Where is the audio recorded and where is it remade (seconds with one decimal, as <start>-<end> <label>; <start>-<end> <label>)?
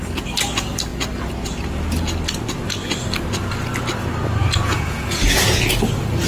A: 0.0-4.4 recorded; 4.4-5.8 remade; 5.8-6.3 recorded